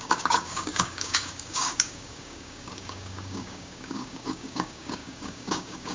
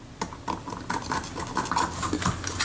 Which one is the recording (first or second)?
second